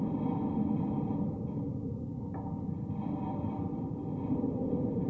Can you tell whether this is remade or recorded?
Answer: recorded